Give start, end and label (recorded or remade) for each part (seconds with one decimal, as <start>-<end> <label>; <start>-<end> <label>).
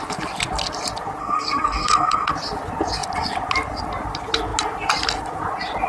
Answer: 0.0-1.2 recorded; 1.2-2.3 remade; 2.3-5.9 recorded